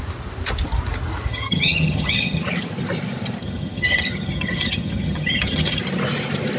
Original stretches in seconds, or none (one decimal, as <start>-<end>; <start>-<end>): 0.0-1.3; 2.4-3.4; 5.8-6.6